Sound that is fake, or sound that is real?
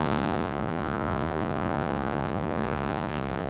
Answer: fake